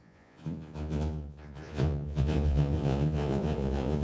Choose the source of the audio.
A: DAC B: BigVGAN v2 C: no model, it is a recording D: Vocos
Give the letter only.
D